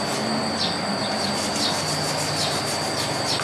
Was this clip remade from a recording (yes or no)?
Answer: no